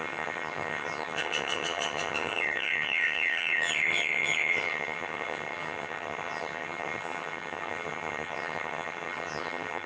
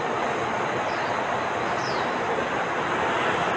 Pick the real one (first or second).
second